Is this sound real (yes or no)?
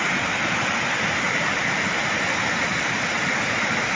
yes